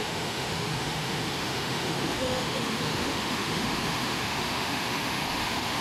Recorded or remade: remade